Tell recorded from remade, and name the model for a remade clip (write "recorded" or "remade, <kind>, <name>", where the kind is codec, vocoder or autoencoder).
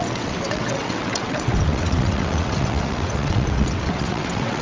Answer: remade, vocoder, WaveNeXt